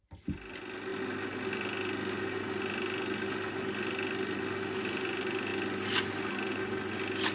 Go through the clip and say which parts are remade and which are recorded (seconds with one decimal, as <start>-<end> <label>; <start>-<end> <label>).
0.0-7.3 recorded